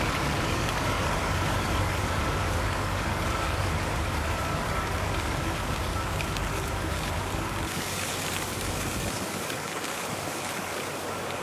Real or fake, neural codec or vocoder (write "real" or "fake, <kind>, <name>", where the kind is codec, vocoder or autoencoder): fake, codec, DAC